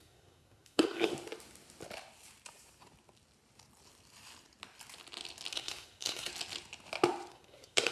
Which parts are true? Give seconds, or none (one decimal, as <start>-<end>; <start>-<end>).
1.1-5.5; 6.3-7.3